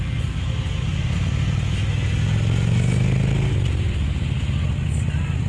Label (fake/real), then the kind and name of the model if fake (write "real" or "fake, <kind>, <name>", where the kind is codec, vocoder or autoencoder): real